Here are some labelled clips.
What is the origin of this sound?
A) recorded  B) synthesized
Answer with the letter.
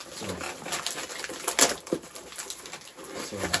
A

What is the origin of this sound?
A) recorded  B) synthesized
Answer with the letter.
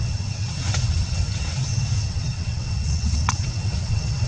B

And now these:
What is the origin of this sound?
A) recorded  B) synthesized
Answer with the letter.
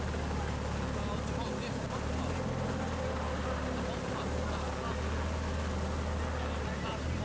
A